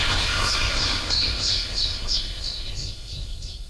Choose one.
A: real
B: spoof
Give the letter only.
B